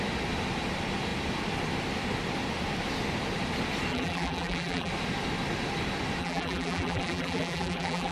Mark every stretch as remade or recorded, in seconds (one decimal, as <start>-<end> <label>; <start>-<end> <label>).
0.0-3.9 recorded; 3.9-4.9 remade; 4.9-6.2 recorded; 6.2-8.1 remade